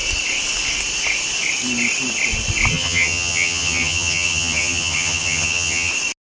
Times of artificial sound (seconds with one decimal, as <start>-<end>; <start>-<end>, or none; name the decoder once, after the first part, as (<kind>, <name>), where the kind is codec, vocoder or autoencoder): 2.7-5.9 (vocoder, HiFi-GAN)